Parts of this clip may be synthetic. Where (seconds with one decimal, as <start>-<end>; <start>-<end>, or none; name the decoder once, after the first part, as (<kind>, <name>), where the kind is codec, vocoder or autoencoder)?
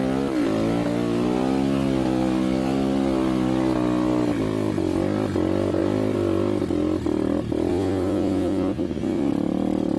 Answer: 7.7-9.3 (vocoder, Vocos)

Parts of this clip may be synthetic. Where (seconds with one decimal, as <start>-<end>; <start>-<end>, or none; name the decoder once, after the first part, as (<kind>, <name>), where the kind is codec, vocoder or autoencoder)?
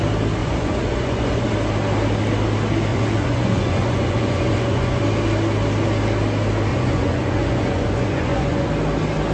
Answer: 0.4-1.5 (vocoder, Vocos); 2.9-5.0; 6.7-8.7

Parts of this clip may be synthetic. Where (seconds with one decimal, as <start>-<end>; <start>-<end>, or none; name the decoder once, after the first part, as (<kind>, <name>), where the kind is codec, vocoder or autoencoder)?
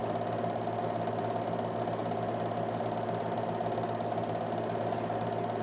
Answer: none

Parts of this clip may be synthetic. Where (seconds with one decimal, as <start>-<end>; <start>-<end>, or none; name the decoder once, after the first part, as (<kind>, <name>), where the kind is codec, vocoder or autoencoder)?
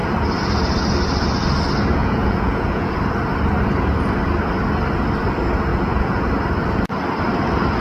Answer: 2.0-2.9 (vocoder, Vocos); 5.7-6.3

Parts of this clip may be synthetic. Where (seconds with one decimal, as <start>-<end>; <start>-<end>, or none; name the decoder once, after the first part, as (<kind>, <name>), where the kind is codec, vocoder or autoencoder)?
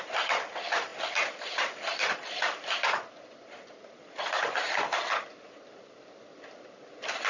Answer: none